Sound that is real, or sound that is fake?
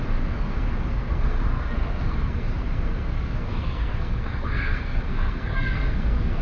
fake